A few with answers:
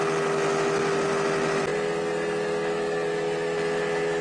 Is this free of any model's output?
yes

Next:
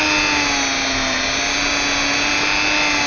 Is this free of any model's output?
yes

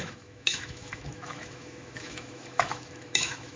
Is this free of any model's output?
no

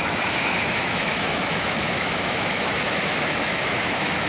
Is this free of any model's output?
no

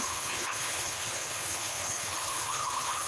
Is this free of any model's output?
no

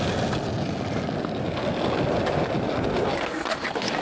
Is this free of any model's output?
yes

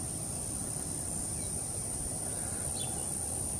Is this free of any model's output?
yes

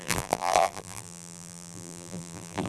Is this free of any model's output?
no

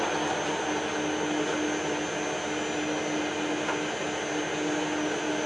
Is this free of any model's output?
yes